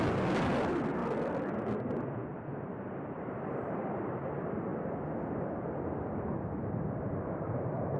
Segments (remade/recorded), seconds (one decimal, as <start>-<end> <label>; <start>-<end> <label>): 0.0-1.0 remade; 1.0-1.7 recorded; 1.7-4.7 remade; 4.7-6.7 recorded; 6.7-8.0 remade